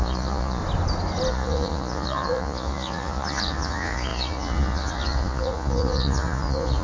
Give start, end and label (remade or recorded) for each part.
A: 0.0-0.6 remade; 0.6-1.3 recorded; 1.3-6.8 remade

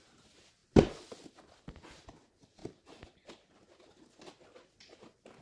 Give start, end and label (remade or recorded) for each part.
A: 0.0-5.4 recorded

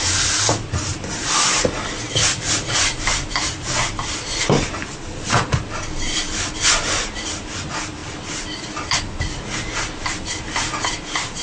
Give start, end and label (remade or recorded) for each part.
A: 0.0-11.4 recorded

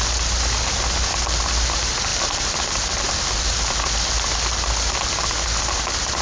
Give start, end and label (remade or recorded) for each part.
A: 0.0-6.2 recorded

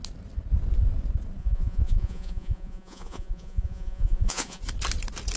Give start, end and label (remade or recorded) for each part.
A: 0.0-1.4 recorded; 1.4-4.6 remade; 4.6-5.4 recorded

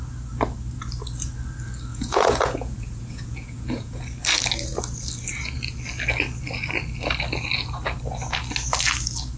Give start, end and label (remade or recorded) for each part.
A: 0.0-1.9 recorded; 1.9-4.0 remade; 4.0-9.4 recorded